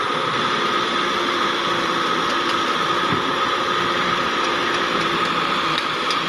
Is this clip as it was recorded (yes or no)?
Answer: no